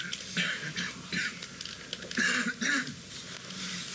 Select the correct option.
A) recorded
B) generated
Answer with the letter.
A